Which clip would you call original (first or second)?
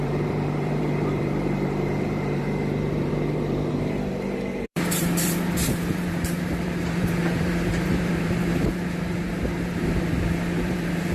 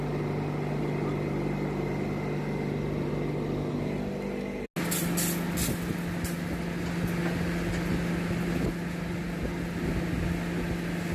second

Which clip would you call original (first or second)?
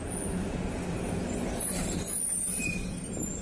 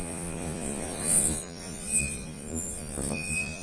first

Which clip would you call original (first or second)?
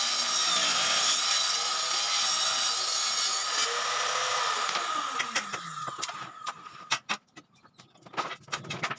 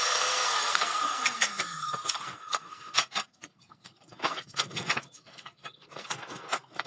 first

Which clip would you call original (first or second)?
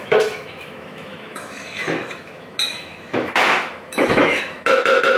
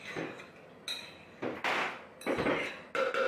second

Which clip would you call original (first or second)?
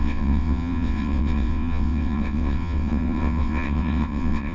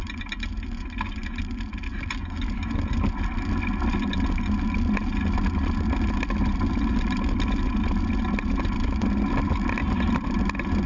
second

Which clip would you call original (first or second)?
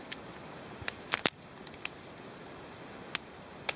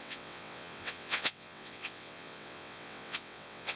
first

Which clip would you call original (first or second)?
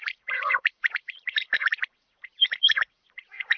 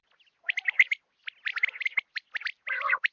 second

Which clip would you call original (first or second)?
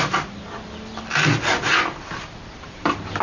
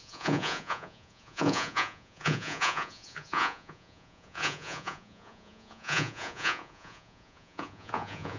first